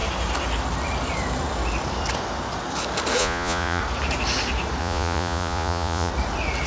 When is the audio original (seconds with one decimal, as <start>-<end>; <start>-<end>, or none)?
0.0-3.2; 3.8-4.8; 6.1-6.7